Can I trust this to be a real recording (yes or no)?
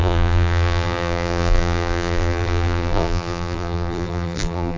no